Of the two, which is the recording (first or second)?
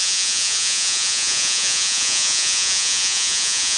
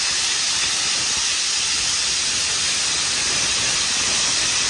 second